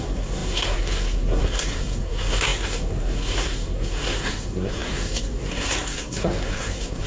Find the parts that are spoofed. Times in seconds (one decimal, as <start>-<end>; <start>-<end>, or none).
0.0-7.1